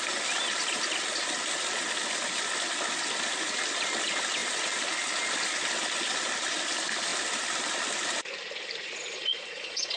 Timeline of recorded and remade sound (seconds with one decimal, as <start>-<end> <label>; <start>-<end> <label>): 0.0-9.2 recorded; 9.2-10.0 remade